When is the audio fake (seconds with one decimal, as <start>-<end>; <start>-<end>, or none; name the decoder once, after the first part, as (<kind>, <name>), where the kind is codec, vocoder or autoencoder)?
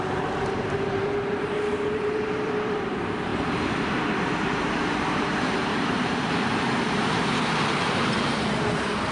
0.0-9.1 (vocoder, BigVGAN v2)